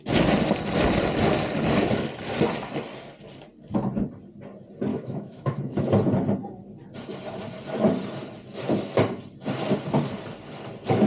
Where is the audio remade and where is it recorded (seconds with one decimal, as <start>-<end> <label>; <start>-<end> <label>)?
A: 0.0-4.9 recorded; 4.9-5.9 remade; 5.9-11.1 recorded